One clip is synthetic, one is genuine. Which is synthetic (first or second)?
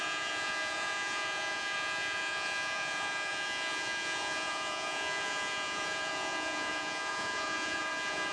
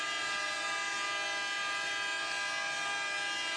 first